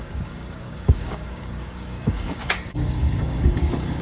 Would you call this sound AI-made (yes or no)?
yes